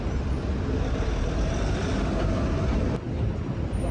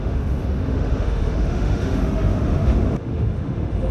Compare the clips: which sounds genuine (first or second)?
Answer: first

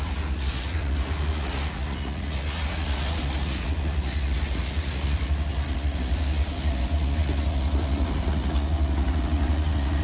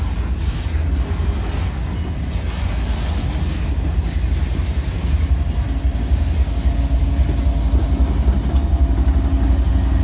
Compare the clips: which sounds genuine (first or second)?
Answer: second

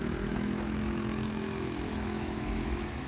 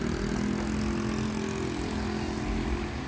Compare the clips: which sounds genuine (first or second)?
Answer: second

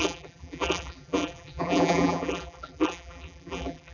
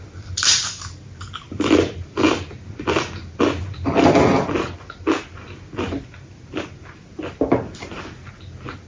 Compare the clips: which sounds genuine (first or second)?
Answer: second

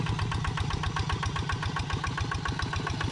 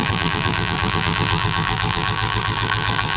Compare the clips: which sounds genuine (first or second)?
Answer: first